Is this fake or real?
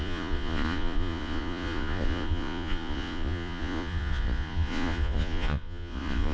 fake